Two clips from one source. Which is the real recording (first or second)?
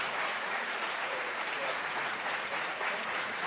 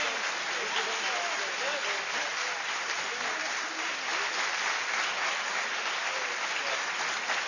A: second